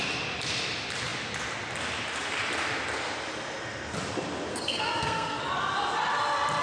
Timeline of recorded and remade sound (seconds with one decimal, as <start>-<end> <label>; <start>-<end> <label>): 0.0-4.5 recorded; 4.5-5.4 remade; 5.4-6.6 recorded